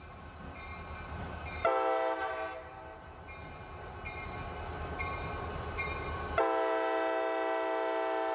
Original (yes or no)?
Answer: yes